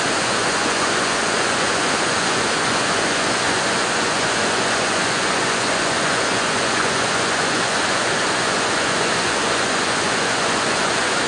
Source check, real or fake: fake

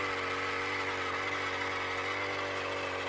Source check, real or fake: real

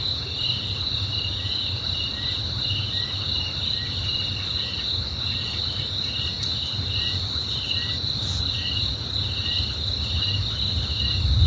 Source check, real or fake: real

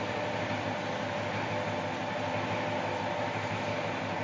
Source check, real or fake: real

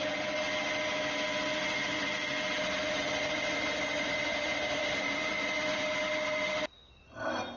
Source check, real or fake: real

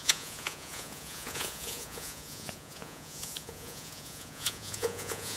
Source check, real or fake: fake